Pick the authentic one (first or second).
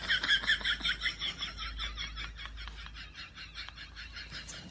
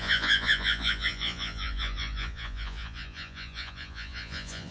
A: first